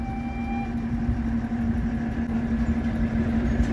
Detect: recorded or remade recorded